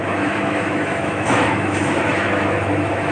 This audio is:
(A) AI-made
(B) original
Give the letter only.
A